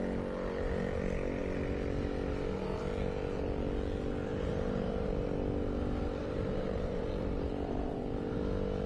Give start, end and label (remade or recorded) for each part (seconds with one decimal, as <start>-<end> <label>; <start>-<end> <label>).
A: 0.0-4.3 recorded; 4.3-5.1 remade; 5.1-6.2 recorded; 6.2-8.4 remade; 8.4-8.9 recorded